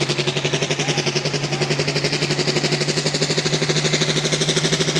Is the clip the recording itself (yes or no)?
yes